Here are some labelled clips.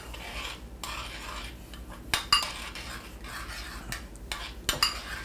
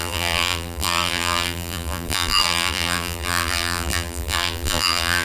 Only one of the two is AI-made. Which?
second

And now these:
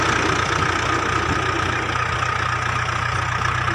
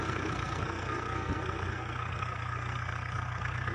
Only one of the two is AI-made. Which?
second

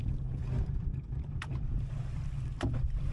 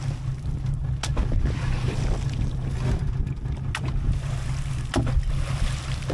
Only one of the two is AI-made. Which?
first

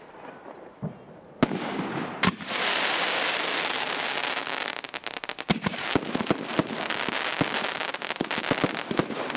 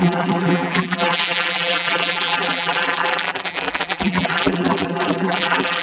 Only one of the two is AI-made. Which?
second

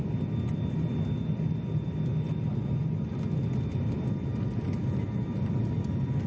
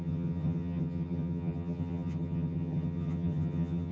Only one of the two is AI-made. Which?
second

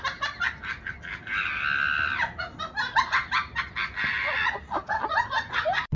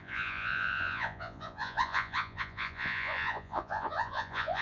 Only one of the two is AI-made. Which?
second